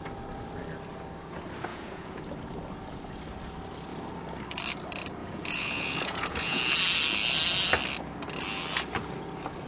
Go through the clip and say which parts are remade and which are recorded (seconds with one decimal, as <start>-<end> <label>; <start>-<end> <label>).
0.0-1.7 recorded; 1.7-2.2 remade; 2.2-5.2 recorded; 5.2-6.6 remade; 6.6-9.7 recorded